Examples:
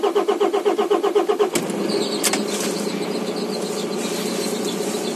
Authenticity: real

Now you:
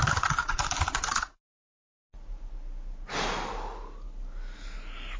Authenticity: real